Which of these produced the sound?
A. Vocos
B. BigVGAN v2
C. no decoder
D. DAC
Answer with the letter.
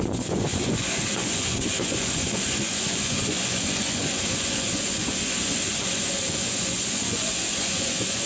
A